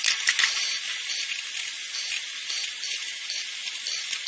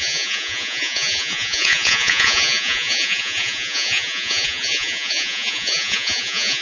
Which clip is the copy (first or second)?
second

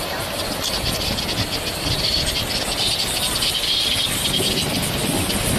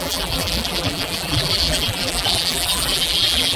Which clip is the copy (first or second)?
second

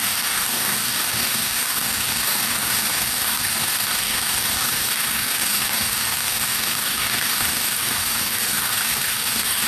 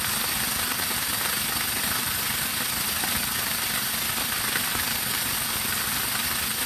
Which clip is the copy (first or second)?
first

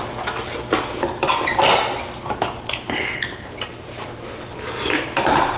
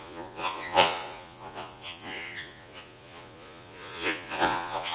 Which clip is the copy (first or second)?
second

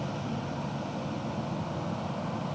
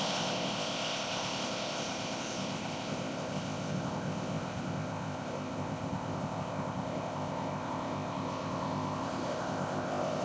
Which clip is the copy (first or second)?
second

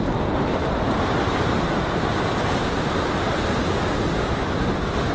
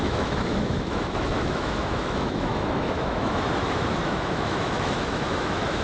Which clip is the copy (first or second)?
second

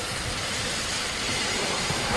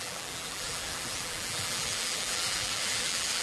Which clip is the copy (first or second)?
second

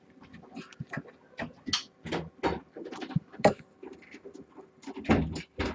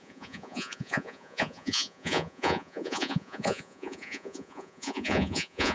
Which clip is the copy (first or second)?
second